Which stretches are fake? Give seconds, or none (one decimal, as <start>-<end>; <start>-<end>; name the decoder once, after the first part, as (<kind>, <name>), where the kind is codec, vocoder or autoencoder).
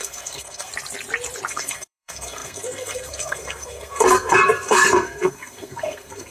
0.0-0.7 (codec, SNAC); 1.5-6.3